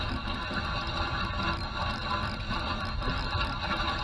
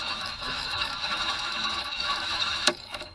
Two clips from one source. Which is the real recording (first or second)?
first